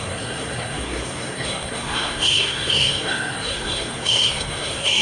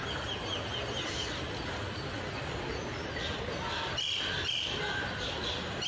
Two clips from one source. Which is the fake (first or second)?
first